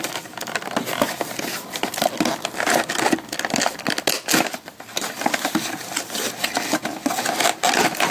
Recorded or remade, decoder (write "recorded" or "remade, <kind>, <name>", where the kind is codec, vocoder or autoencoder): recorded